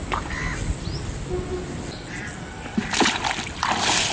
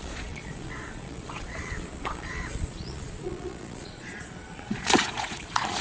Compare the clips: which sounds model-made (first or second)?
second